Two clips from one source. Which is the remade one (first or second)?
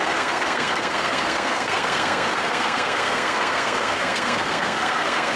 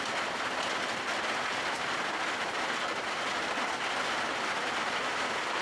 first